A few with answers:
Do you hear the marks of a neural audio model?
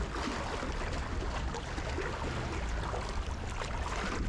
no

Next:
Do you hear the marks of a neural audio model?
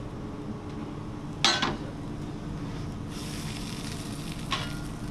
no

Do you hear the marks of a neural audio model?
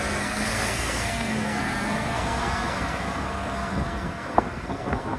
yes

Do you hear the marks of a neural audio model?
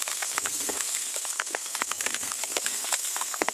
yes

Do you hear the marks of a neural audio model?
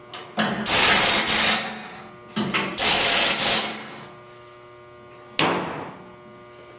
no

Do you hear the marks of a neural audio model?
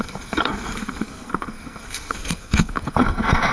yes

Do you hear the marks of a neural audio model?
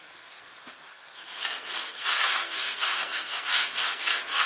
yes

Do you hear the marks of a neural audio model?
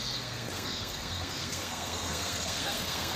yes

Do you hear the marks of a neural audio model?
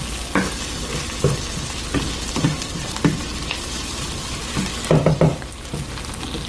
no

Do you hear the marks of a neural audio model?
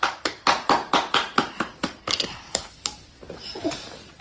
no